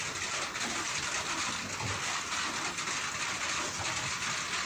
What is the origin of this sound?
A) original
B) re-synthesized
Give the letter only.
A